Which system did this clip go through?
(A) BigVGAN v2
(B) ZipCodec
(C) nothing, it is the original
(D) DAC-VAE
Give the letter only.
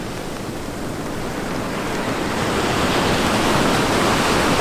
C